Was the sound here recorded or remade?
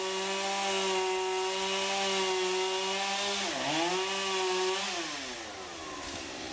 recorded